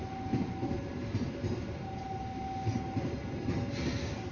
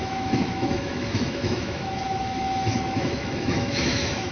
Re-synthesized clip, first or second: second